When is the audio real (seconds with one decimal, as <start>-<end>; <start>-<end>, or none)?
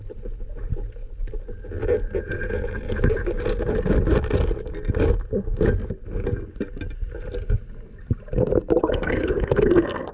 0.0-8.8